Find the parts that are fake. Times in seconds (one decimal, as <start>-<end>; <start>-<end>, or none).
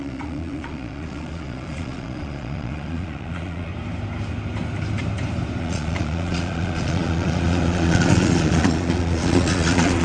0.0-3.7; 5.6-10.0